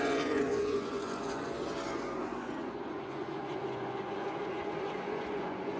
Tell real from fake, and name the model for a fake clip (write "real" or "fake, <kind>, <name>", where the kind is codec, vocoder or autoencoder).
fake, vocoder, Vocos